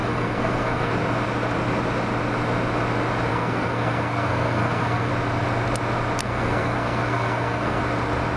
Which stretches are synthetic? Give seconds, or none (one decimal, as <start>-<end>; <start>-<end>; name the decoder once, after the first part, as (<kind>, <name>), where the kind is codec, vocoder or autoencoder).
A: 0.0-0.9 (codec, SNAC); 3.3-5.1; 6.2-7.8